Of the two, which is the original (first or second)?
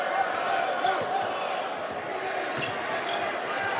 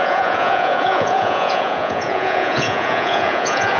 first